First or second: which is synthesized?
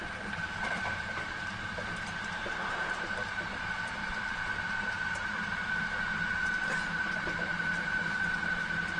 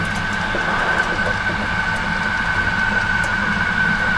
first